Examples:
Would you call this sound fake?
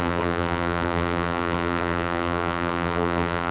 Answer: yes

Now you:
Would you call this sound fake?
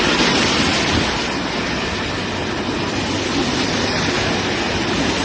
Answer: no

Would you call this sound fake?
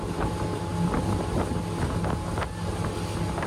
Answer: no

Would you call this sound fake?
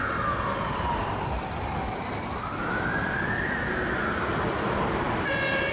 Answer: yes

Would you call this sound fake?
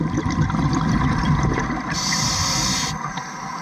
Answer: no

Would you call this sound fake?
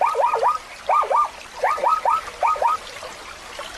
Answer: yes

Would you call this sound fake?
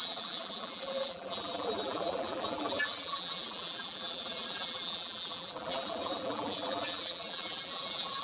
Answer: yes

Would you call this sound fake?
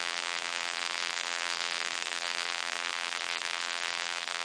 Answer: yes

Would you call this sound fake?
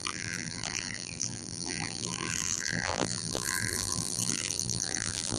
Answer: yes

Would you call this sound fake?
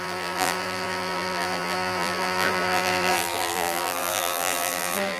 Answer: yes